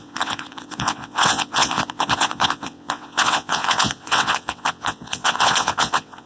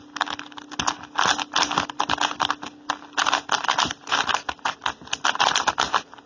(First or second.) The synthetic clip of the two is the first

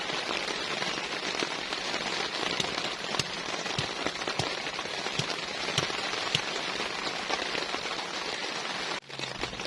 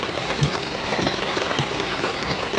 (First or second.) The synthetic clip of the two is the second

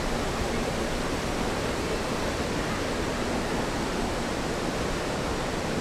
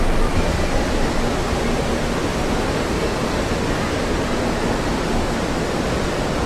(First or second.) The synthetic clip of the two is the first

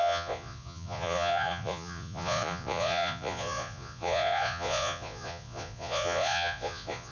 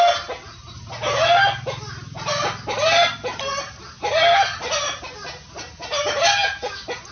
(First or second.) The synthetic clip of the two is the first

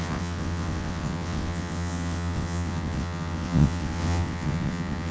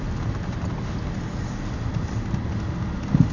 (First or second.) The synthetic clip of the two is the first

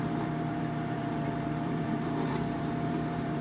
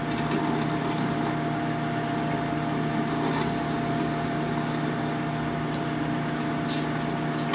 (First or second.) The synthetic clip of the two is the first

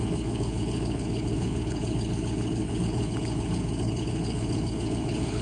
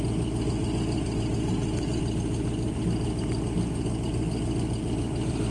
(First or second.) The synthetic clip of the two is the first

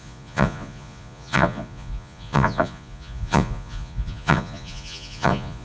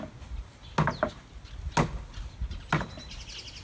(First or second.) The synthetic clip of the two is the first